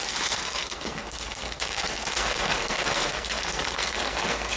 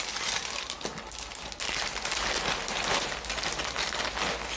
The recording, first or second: second